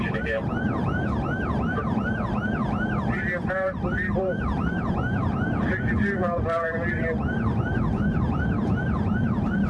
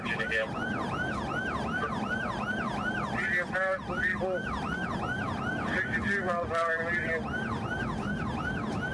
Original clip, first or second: second